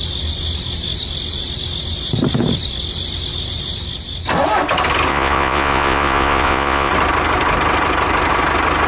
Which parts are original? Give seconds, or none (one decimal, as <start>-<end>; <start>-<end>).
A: 0.0-5.1; 6.9-8.9